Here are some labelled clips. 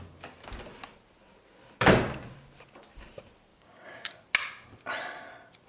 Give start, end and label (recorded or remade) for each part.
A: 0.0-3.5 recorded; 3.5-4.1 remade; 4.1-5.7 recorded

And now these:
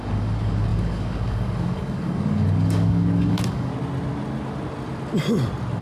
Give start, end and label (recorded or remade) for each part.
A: 0.0-3.7 remade; 3.7-5.8 recorded

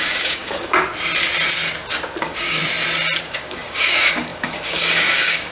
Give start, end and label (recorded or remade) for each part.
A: 0.0-0.9 remade; 0.9-2.2 recorded; 2.2-2.6 remade; 2.6-3.2 recorded; 3.2-5.5 remade

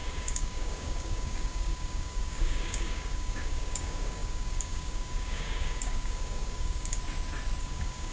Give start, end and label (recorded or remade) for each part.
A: 0.0-7.0 remade; 7.0-7.6 recorded; 7.6-8.1 remade